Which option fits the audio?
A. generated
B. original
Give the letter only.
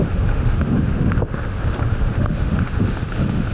A